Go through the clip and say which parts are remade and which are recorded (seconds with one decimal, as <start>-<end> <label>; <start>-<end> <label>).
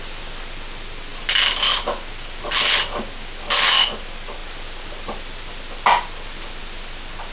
0.0-7.3 recorded